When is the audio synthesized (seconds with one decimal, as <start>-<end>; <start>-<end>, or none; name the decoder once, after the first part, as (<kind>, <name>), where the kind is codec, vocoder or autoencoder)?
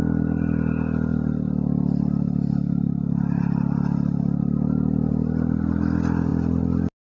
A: none